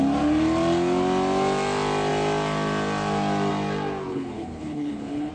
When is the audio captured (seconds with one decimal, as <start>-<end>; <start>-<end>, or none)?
0.0-4.1